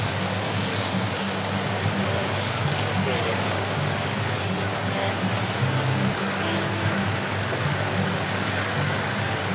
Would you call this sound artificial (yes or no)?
yes